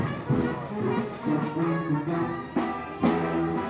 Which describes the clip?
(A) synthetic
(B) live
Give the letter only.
B